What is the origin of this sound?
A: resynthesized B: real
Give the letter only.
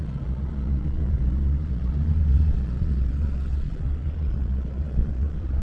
A